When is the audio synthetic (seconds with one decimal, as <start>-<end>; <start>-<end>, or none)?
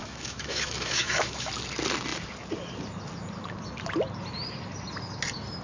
0.0-1.5